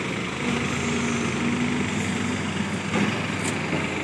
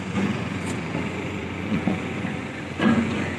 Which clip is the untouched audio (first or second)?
first